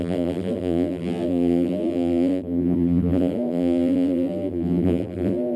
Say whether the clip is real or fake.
fake